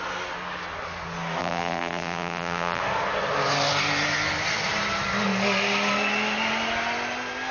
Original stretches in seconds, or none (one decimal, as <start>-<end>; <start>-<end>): 0.0-1.4; 2.8-7.5